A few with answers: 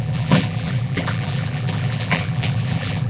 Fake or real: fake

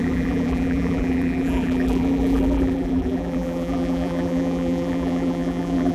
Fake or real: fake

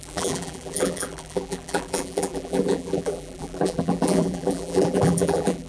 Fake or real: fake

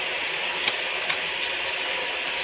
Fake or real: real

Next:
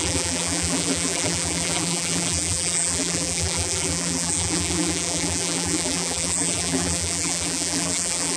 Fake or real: fake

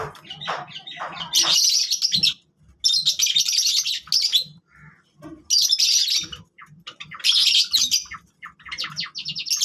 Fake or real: real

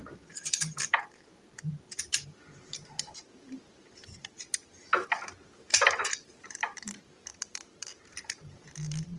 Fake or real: fake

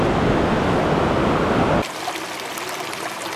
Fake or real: real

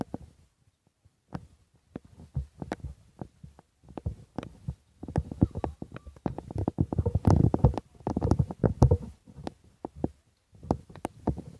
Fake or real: real